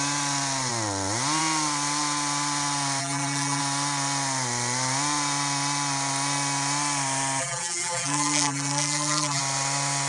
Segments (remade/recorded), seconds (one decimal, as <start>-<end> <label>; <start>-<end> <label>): 0.0-3.0 recorded; 3.0-3.6 remade; 3.6-7.4 recorded; 7.4-9.4 remade; 9.4-10.1 recorded